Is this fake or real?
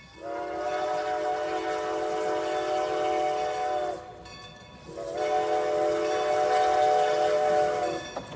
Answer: real